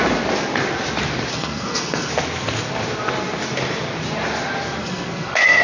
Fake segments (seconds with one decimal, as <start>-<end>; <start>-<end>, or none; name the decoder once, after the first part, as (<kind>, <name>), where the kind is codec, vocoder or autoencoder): 1.3-2.1 (codec, SNAC); 4.8-5.6